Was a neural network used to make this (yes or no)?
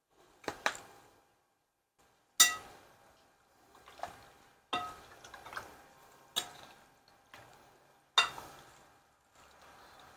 no